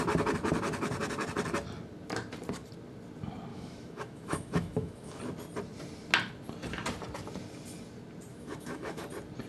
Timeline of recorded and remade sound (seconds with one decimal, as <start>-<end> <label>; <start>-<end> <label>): 0.0-3.5 recorded; 3.5-5.2 remade; 5.2-8.3 recorded; 8.3-9.0 remade; 9.0-9.5 recorded

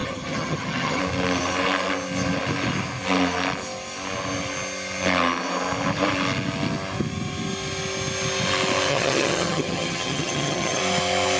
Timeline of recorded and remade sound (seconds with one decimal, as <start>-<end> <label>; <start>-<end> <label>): 0.0-1.0 remade; 1.0-8.9 recorded; 8.9-10.8 remade; 10.8-11.4 recorded

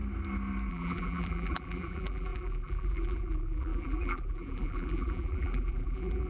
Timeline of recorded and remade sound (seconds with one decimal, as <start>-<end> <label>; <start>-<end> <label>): 0.0-0.7 recorded; 0.7-6.3 remade

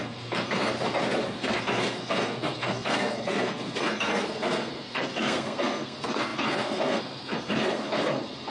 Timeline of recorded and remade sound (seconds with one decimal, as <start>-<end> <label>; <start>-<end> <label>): 0.0-0.7 remade; 0.7-1.4 recorded; 1.4-8.5 remade